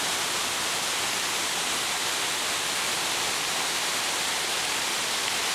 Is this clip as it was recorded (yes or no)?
yes